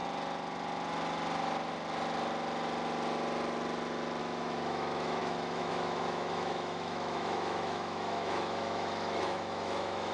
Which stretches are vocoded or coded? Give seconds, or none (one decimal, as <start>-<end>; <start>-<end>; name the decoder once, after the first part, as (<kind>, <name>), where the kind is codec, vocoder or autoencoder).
4.2-10.1 (autoencoder, DAC-VAE)